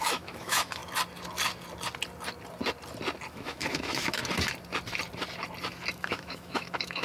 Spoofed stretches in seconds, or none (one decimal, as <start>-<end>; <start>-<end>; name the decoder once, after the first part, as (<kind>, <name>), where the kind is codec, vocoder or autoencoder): 0.0-0.8 (autoencoder, DAC-VAE); 3.3-4.2; 5.9-7.0